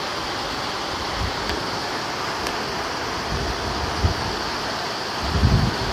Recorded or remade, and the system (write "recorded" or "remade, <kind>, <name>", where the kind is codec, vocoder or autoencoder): recorded